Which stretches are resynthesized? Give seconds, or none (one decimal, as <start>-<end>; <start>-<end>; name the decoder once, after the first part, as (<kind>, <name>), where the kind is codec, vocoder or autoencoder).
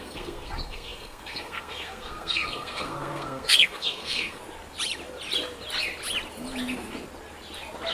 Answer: 0.0-4.4 (codec, SNAC)